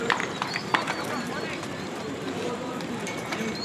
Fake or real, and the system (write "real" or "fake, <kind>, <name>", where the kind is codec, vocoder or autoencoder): fake, vocoder, BigVGAN v2